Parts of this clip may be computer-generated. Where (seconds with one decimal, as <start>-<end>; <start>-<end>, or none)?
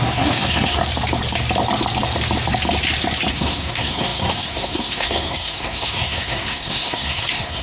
0.0-0.8; 3.3-7.6